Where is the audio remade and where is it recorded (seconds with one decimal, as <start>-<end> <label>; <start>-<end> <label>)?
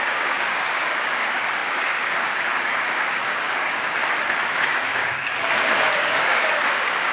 0.0-4.0 remade; 4.0-4.5 recorded; 4.5-7.1 remade